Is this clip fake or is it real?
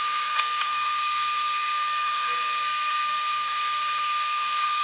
fake